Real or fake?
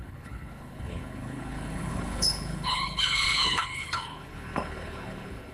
fake